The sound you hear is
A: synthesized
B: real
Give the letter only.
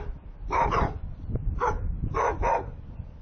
B